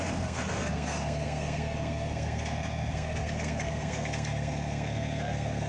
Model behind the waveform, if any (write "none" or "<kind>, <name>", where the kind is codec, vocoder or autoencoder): codec, SNAC